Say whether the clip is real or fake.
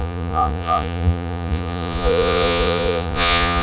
fake